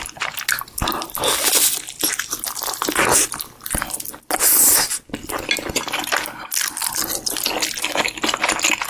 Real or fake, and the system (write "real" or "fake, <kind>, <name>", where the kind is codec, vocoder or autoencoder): real